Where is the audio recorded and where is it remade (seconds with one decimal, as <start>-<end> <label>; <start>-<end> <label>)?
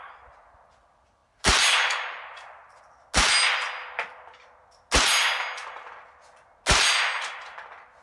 0.0-8.0 recorded